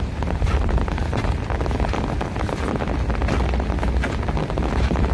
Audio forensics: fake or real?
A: real